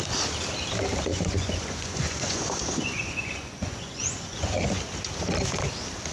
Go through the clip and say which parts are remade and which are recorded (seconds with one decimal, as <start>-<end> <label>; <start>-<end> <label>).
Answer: 0.0-1.1 recorded; 1.1-4.8 remade; 4.8-6.1 recorded